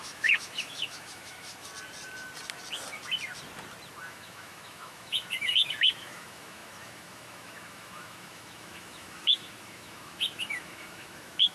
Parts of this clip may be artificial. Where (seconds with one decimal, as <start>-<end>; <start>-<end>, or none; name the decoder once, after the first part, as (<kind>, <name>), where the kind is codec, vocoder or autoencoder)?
0.0-1.7 (autoencoder, DAC-VAE); 4.0-11.5

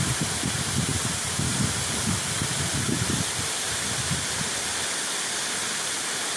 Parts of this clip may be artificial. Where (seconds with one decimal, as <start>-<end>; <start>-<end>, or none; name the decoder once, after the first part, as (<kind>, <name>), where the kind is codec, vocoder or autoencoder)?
none

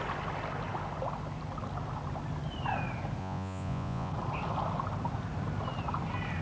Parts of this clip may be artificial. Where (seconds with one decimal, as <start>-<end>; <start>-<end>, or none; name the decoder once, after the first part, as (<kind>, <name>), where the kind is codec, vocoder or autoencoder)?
3.2-4.1 (vocoder, Vocos)

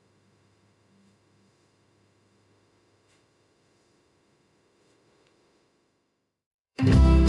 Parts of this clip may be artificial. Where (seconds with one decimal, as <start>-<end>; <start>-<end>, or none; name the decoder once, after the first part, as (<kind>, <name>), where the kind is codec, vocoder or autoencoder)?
0.0-7.3 (autoencoder, DAC-VAE)

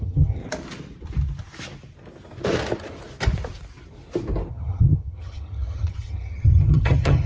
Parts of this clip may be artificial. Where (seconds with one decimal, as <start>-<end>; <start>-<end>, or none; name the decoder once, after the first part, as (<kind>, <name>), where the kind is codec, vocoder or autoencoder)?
0.0-0.4 (vocoder, HiFi-GAN); 4.5-7.3

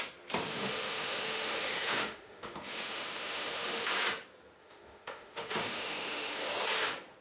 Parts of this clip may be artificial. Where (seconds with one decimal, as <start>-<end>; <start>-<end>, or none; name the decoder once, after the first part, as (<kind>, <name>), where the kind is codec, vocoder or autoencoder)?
0.5-3.9 (autoencoder, DAC-VAE); 4.6-6.5

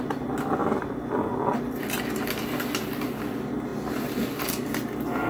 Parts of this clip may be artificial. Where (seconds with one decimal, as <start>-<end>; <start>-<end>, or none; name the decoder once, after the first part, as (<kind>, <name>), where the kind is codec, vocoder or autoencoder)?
none